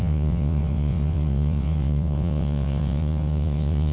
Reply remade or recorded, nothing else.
remade